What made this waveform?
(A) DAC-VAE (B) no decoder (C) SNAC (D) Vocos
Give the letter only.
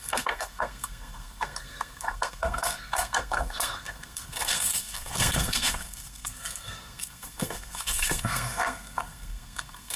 C